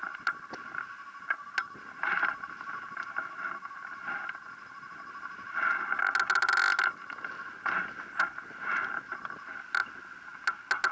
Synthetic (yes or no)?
no